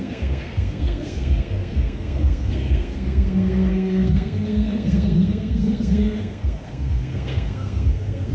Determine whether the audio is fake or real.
fake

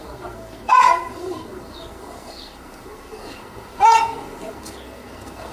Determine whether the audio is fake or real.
fake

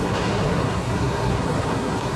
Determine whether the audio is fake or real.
fake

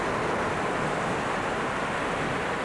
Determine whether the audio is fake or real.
real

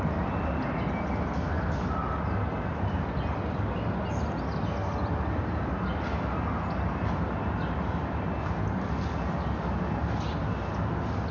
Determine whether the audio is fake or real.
real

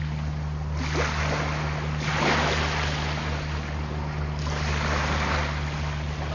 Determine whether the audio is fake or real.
real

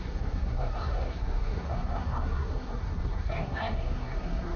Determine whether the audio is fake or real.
fake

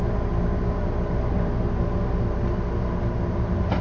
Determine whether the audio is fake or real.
real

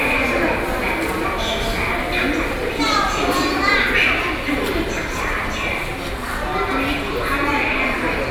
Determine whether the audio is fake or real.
real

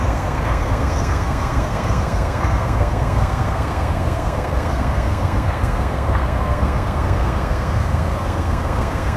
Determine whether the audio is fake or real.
fake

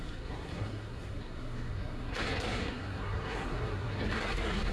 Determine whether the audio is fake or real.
fake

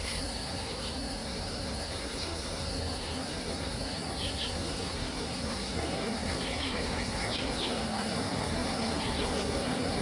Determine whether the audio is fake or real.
fake